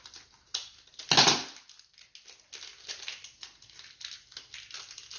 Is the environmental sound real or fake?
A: real